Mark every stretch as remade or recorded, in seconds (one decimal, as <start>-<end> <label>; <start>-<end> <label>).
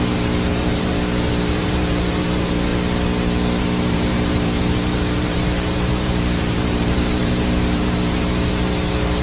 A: 0.0-2.7 remade; 2.7-3.6 recorded; 3.6-9.2 remade